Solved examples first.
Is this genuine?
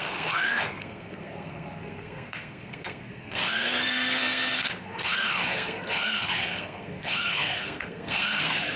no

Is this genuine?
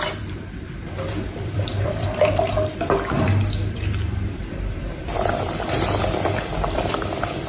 no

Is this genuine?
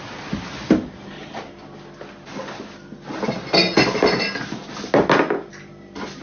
yes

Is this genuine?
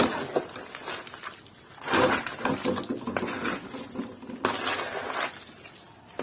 yes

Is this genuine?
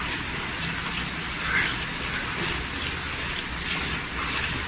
yes